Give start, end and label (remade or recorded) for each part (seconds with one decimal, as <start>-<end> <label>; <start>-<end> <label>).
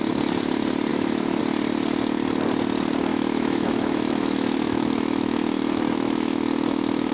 0.0-0.9 recorded; 0.9-1.4 remade; 1.4-3.1 recorded; 3.1-7.1 remade